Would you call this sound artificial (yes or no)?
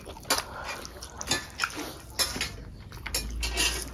no